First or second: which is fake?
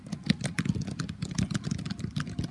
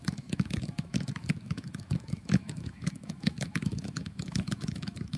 second